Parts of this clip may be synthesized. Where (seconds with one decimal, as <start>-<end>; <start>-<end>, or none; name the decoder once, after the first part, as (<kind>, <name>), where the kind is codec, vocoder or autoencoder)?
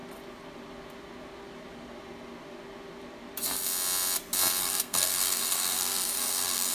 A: 4.6-6.7 (codec, SNAC)